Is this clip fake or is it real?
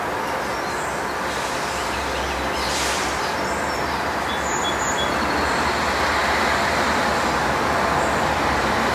real